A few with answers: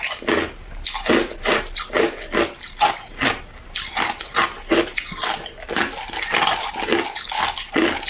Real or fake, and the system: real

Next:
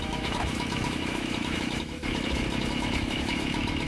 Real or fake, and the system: fake, autoencoder, DAC-VAE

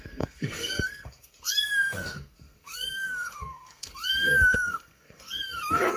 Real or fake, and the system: fake, codec, SNAC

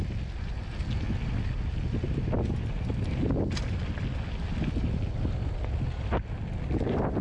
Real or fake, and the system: real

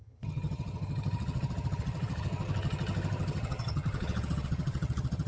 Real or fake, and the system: fake, vocoder, HiFi-GAN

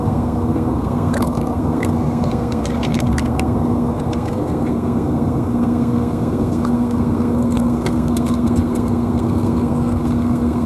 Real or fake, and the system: fake, codec, SNAC